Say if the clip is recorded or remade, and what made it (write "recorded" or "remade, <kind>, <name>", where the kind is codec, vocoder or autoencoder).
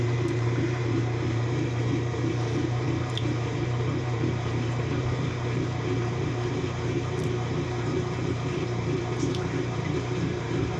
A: remade, vocoder, BigVGAN v2